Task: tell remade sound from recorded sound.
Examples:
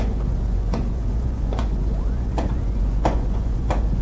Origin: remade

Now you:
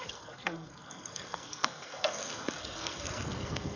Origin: remade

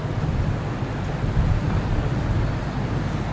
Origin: recorded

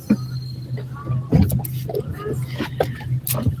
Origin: recorded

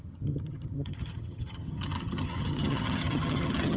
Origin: remade